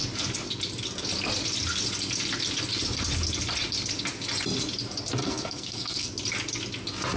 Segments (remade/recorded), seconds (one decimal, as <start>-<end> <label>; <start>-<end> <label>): 0.0-5.2 recorded; 5.2-6.1 remade; 6.1-7.2 recorded